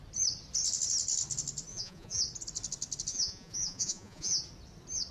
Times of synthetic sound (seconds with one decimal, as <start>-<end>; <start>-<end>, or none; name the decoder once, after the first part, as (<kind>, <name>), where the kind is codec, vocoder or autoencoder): 1.7-2.2 (vocoder, Vocos); 3.1-4.4